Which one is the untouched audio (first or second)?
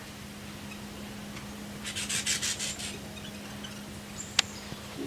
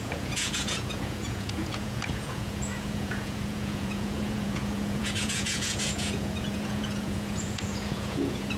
first